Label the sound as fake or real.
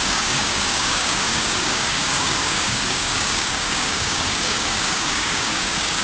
fake